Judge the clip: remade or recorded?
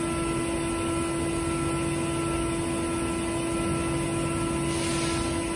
recorded